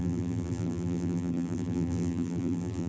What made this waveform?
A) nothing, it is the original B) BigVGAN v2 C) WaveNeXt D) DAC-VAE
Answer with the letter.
B